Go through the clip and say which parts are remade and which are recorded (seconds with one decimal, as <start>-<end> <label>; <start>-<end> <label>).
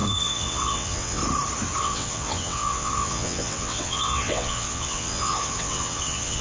0.0-1.2 remade; 1.2-1.8 recorded; 1.8-6.4 remade